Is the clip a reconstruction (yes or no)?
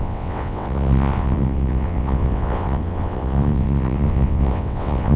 yes